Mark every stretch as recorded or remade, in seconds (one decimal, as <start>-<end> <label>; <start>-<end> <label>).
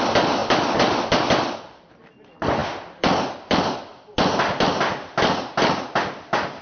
0.0-6.6 recorded